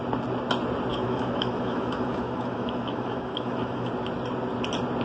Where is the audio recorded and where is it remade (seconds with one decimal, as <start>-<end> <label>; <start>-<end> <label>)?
0.0-0.9 recorded; 0.9-3.9 remade; 3.9-5.0 recorded

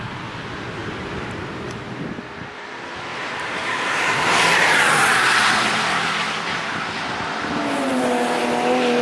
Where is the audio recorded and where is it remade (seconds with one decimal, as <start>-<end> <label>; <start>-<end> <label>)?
0.0-0.8 recorded; 0.8-1.4 remade; 1.4-3.1 recorded; 3.1-6.1 remade; 6.1-9.0 recorded

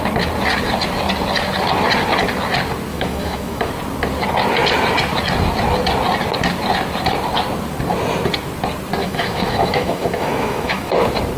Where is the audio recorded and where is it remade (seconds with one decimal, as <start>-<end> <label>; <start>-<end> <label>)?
0.0-2.9 recorded; 2.9-3.7 remade; 3.7-9.0 recorded; 9.0-10.9 remade; 10.9-11.4 recorded

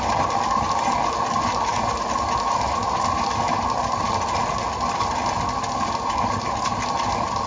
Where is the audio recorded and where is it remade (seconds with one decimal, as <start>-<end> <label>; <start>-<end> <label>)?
0.0-7.5 recorded